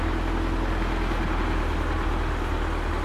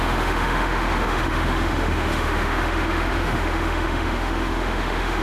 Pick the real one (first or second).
first